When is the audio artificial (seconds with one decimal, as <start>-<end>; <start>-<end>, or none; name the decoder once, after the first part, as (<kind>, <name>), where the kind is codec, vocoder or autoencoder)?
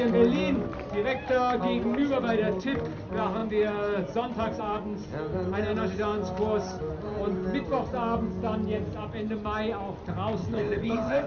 10.4-11.3 (codec, HILCodec)